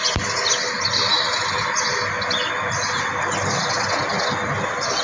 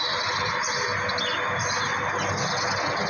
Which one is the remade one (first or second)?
first